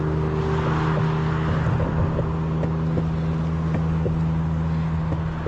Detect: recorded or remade recorded